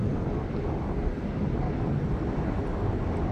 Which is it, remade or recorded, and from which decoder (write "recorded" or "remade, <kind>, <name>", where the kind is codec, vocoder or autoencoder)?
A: recorded